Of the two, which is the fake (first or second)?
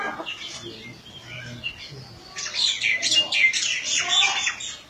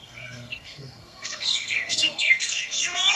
second